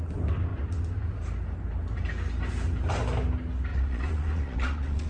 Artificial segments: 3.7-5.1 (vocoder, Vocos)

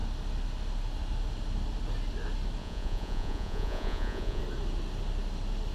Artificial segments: 2.6-4.4 (vocoder, Vocos)

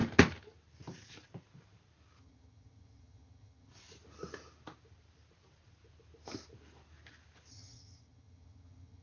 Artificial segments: 2.2-3.7 (vocoder, HiFi-GAN); 7.5-9.0

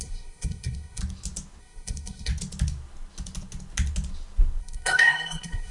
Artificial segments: 0.0-1.0 (codec, SNAC); 1.6-2.3; 4.6-5.7

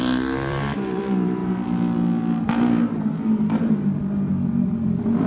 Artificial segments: 0.0-1.4 (vocoder, BigVGAN v2); 4.3-5.3

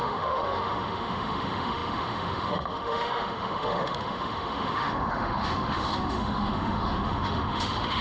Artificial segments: 0.0-8.0 (autoencoder, DAC-VAE)

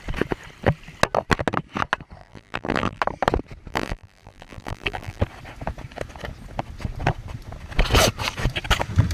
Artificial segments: 2.2-3.0 (vocoder, BigVGAN v2); 3.7-5.2